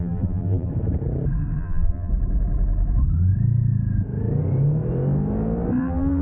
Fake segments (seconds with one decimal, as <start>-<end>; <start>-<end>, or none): 0.0-0.7; 1.6-2.1; 5.8-6.2